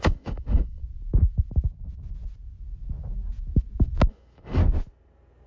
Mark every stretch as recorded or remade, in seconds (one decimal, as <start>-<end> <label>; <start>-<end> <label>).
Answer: 0.0-0.8 remade; 0.8-4.1 recorded; 4.1-4.6 remade; 4.6-5.5 recorded